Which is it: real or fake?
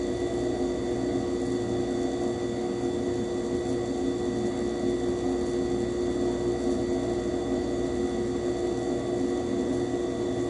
real